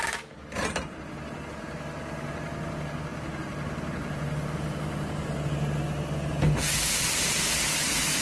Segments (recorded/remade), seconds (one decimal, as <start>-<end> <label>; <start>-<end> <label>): 0.0-8.2 recorded

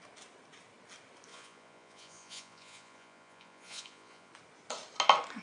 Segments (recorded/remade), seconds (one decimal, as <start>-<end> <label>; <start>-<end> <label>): 0.0-1.3 recorded; 1.3-4.3 remade; 4.3-5.4 recorded

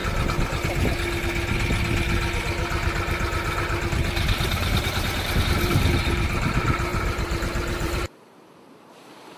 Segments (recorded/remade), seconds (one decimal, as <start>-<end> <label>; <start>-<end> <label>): 0.0-3.9 recorded; 3.9-9.4 remade

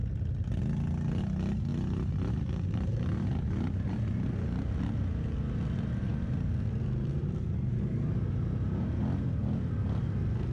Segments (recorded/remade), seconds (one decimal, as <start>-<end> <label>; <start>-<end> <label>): 0.0-1.2 remade; 1.2-6.1 recorded; 6.1-9.0 remade; 9.0-10.5 recorded

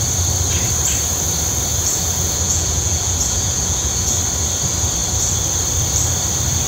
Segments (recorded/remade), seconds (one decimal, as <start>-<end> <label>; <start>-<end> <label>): 0.0-1.7 recorded; 1.7-4.1 remade; 4.1-6.7 recorded

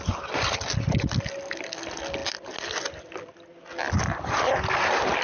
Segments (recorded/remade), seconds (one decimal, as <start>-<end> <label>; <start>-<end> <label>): 0.0-5.2 recorded